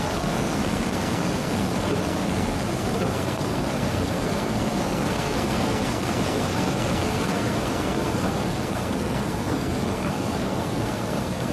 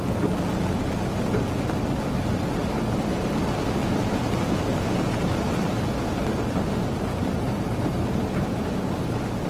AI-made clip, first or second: first